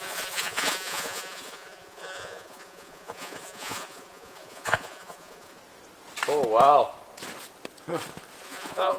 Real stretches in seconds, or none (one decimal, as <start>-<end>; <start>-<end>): 5.6-8.4